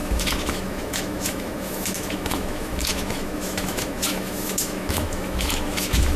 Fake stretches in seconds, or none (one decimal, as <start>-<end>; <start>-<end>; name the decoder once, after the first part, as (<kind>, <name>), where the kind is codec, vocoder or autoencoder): 0.0-6.2 (autoencoder, DAC-VAE)